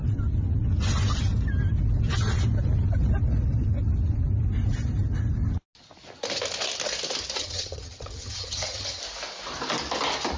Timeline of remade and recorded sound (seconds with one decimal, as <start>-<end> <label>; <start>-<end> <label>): 0.0-7.4 recorded; 7.4-9.0 remade; 9.0-10.4 recorded